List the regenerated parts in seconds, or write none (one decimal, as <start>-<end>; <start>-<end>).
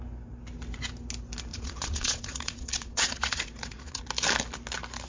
1.5-4.0